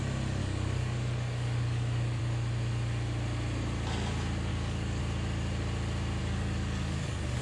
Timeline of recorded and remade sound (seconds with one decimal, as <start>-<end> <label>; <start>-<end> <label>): 0.0-0.4 recorded; 0.4-2.2 remade; 2.2-4.5 recorded; 4.5-5.0 remade; 5.0-6.2 recorded; 6.2-7.4 remade